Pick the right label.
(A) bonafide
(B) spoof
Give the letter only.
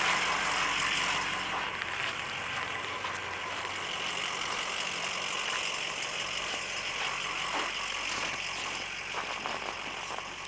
A